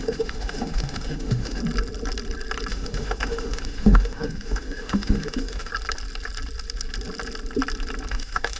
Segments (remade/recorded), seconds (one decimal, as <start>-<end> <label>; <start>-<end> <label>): 0.0-1.6 remade; 1.6-2.7 recorded; 2.7-5.7 remade; 5.7-8.1 recorded; 8.1-8.6 remade